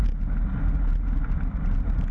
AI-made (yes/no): no